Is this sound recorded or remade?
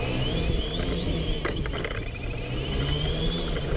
recorded